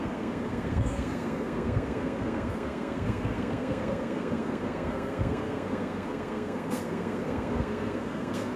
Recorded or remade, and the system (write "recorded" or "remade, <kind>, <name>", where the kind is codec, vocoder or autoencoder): remade, codec, SNAC